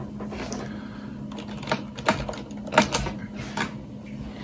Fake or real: real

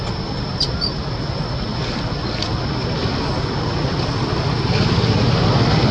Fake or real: real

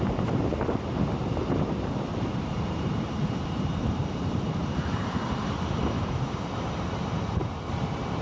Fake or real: fake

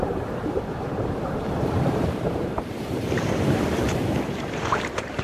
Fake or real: fake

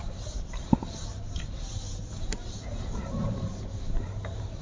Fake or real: fake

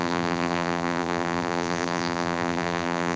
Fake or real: fake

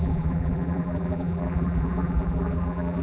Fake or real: fake